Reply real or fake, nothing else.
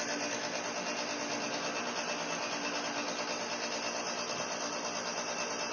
real